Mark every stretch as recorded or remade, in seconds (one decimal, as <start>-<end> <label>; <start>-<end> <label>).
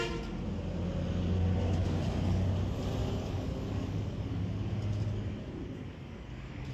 0.0-1.8 recorded; 1.8-2.4 remade; 2.4-3.0 recorded; 3.0-6.7 remade